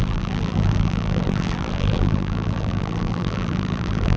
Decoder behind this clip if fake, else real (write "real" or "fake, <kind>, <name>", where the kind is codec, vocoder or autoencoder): fake, vocoder, BigVGAN v2